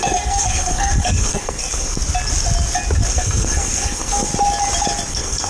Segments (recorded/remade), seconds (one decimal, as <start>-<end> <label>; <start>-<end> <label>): 0.0-2.0 remade; 2.0-3.1 recorded; 3.1-4.3 remade; 4.3-5.1 recorded; 5.1-5.5 remade